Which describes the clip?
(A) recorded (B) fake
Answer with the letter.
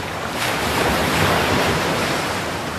B